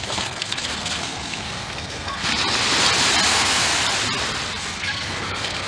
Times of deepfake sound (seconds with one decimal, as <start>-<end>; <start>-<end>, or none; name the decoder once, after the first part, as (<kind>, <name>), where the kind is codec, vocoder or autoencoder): 0.0-2.3 (codec, SNAC); 3.3-3.7; 4.6-5.7